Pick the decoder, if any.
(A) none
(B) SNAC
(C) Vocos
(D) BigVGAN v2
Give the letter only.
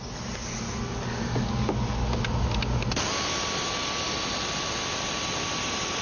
A